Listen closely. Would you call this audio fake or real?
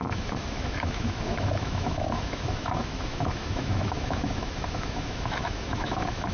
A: fake